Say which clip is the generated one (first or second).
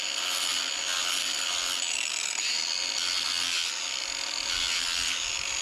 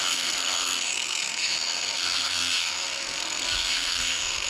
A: second